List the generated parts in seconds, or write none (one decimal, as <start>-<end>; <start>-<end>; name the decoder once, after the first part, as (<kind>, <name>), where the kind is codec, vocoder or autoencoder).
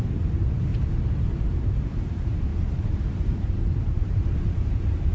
0.0-0.7 (vocoder, BigVGAN v2); 1.2-2.5; 3.2-5.1